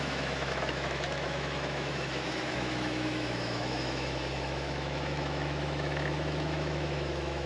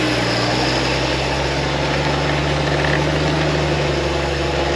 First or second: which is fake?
first